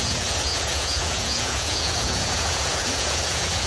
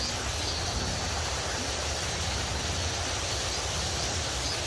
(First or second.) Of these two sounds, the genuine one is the second